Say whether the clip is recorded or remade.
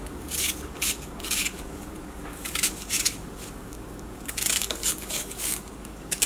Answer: remade